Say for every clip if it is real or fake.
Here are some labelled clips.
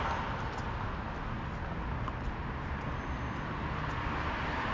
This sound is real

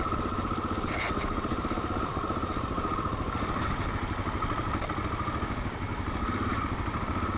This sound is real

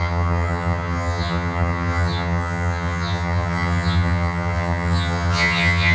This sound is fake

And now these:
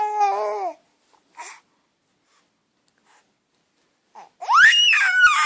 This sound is real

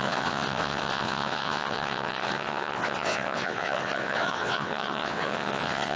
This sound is fake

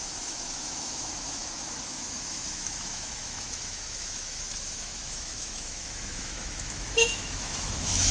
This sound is fake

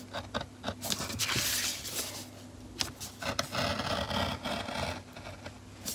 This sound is real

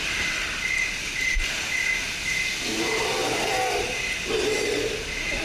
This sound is real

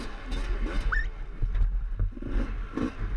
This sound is real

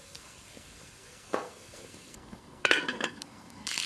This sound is fake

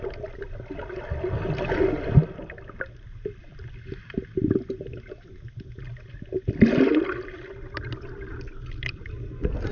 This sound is real